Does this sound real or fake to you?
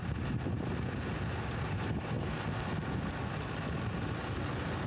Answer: real